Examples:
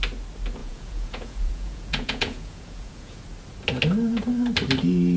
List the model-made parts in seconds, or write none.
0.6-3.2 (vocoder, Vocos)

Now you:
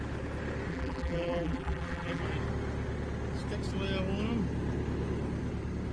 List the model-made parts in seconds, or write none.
0.7-2.2 (vocoder, BigVGAN v2)

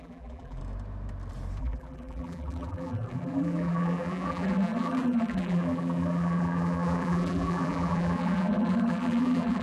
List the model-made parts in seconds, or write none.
0.0-0.6 (vocoder, BigVGAN v2); 1.6-9.6